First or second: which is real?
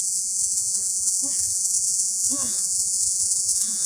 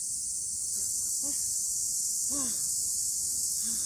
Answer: second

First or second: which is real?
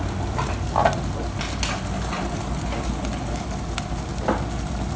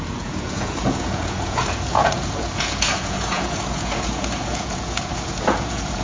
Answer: first